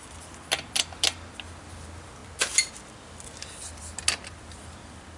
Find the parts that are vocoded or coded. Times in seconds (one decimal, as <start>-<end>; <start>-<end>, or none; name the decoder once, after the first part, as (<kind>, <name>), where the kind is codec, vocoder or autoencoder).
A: none

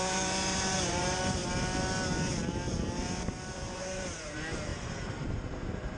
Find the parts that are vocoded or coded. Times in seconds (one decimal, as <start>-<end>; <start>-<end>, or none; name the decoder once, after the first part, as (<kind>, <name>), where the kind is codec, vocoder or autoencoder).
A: 0.0-1.4 (vocoder, BigVGAN v2); 3.2-6.0

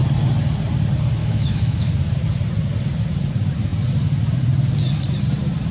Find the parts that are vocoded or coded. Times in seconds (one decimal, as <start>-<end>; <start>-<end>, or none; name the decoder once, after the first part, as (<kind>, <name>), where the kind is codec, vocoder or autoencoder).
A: 1.2-1.9 (autoencoder, DAC-VAE)

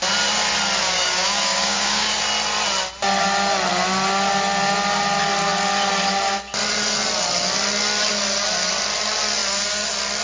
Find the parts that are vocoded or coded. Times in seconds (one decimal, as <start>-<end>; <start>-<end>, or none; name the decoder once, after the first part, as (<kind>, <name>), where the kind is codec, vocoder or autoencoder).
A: 0.8-2.1 (codec, DAC)